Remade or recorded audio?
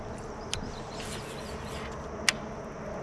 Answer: recorded